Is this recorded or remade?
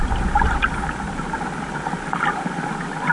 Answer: recorded